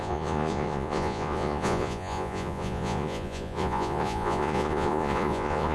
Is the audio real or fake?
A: fake